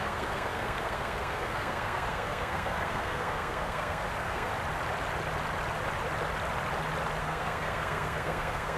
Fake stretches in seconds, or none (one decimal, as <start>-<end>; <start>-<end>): 0.0-4.5; 7.2-8.8